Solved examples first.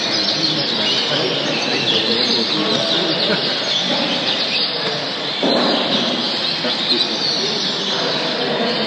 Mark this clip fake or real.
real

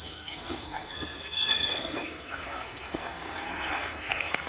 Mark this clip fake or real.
fake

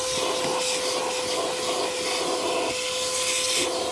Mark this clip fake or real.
real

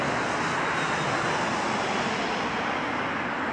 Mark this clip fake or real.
real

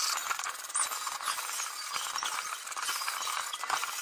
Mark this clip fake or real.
real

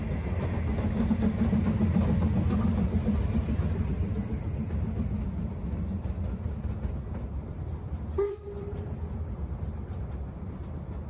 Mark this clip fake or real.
real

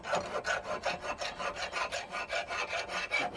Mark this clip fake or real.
real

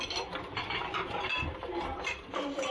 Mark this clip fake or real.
real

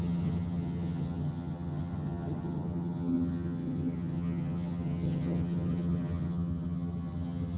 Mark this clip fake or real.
fake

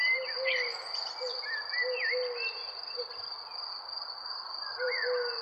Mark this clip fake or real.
real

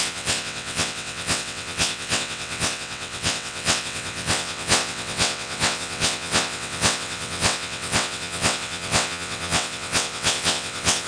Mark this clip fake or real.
fake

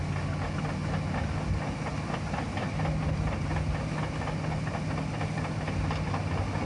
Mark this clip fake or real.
real